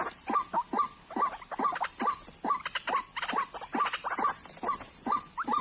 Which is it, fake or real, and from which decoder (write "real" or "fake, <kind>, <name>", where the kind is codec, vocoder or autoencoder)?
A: real